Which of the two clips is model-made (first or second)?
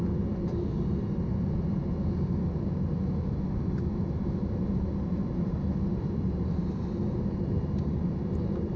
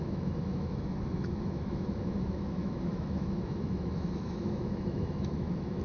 second